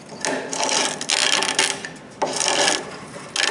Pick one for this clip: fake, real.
real